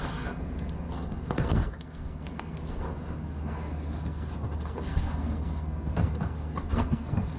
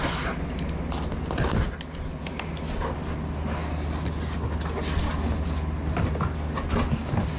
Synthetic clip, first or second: first